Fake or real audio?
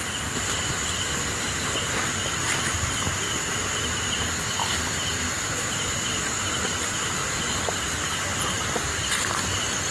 real